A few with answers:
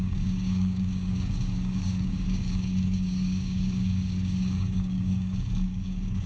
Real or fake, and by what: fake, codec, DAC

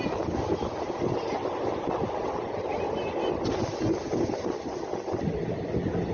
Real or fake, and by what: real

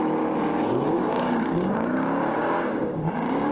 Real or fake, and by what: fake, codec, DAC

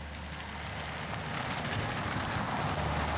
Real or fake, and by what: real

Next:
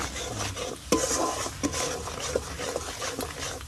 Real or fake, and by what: real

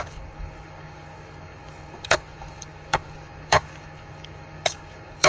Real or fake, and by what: fake, codec, DAC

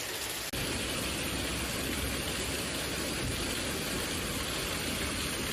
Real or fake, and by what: real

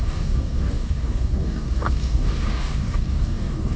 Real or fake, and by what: fake, codec, DAC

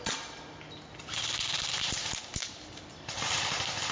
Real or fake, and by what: real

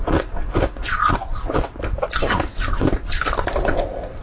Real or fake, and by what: real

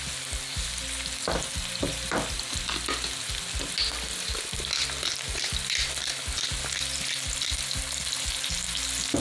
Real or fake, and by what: real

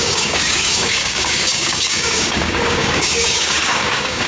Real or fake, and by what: fake, codec, DAC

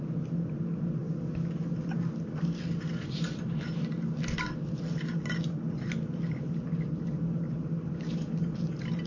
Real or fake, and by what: real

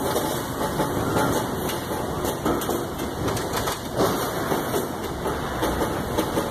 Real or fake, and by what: real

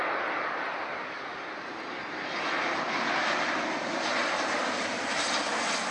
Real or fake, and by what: real